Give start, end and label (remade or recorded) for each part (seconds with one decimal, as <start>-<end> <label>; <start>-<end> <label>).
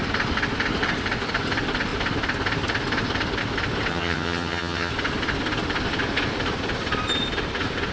0.0-3.9 recorded; 3.9-4.9 remade; 4.9-7.9 recorded